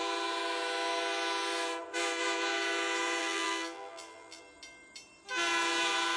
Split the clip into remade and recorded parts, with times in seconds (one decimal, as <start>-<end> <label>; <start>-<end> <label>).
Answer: 0.0-3.2 recorded; 3.2-4.4 remade; 4.4-6.2 recorded